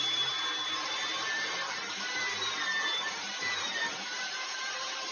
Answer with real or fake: fake